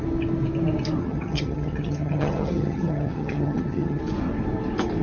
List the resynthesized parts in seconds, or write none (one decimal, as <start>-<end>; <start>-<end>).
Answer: 1.0-4.0